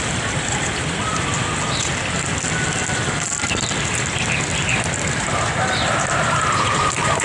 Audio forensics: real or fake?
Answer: real